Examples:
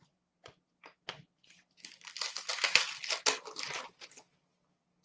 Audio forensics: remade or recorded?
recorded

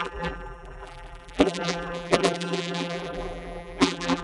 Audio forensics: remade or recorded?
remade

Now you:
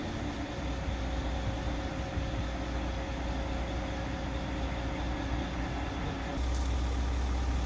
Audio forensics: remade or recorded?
recorded